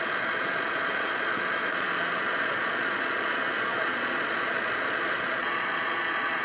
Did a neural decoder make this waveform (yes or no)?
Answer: yes